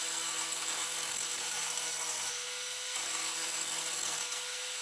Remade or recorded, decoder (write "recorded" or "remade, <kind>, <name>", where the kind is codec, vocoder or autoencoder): remade, codec, SNAC